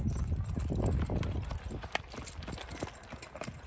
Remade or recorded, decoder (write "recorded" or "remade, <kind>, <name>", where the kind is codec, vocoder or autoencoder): recorded